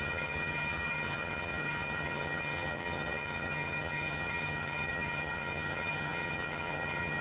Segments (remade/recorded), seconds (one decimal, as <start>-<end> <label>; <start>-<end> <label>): 0.0-7.2 remade